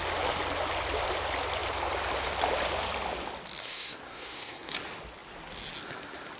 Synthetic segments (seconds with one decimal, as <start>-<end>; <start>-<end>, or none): 3.6-4.7